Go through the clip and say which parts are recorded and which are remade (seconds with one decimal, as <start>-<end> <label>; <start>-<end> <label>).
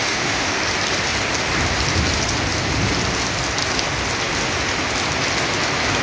0.0-0.6 remade; 0.6-6.0 recorded